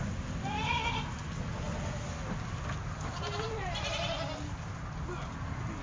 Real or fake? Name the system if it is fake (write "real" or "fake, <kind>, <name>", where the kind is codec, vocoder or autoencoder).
real